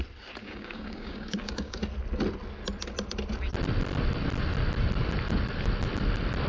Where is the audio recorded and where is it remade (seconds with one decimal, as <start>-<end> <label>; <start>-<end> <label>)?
0.0-0.4 recorded; 0.4-1.8 remade; 1.8-6.5 recorded